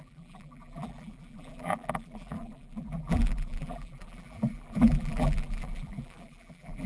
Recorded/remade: remade